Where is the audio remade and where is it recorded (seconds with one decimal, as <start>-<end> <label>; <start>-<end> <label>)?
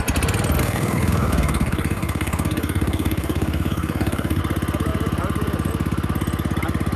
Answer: 0.0-0.6 recorded; 0.6-4.4 remade; 4.4-7.0 recorded